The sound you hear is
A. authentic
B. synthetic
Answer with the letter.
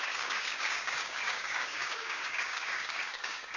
B